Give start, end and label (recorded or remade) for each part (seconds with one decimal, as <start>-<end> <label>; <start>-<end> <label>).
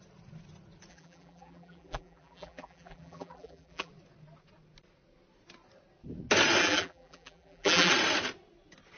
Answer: 0.0-0.9 recorded; 0.9-3.9 remade; 3.9-6.6 recorded; 6.6-7.9 remade; 7.9-9.0 recorded